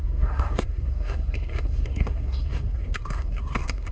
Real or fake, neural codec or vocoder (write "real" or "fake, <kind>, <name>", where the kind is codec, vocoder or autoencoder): fake, codec, SNAC